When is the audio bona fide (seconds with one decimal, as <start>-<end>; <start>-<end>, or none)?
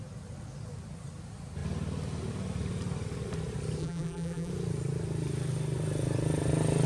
0.0-3.8; 4.5-6.9